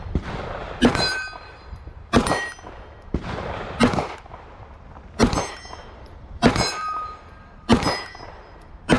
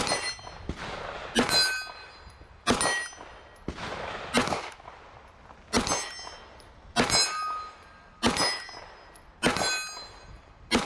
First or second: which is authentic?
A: second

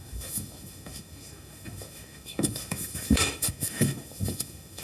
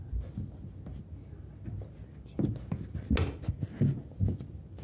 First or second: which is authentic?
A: second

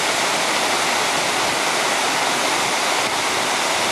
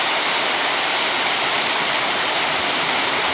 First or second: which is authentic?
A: first